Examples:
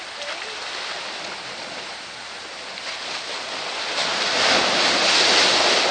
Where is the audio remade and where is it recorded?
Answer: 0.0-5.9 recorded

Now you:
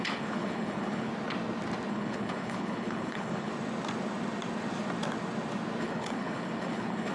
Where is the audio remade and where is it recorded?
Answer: 0.0-1.1 remade; 1.1-1.9 recorded; 1.9-3.5 remade; 3.5-5.8 recorded; 5.8-7.1 remade